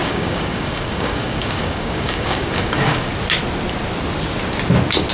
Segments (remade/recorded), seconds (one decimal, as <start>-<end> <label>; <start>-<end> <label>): 0.0-3.1 remade; 3.1-5.1 recorded